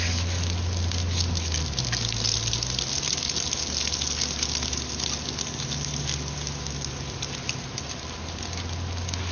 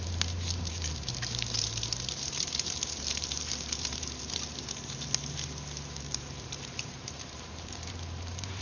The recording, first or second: first